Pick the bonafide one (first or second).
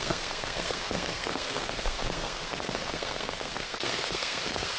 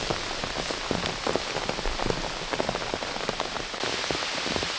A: second